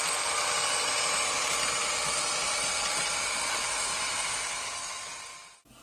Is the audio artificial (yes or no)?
no